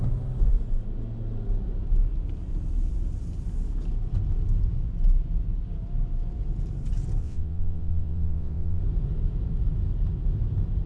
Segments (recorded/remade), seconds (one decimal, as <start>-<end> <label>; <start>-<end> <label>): 0.0-7.2 recorded; 7.2-8.8 remade; 8.8-10.9 recorded